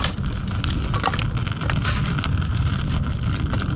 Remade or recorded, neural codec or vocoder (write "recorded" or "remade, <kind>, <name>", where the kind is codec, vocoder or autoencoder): recorded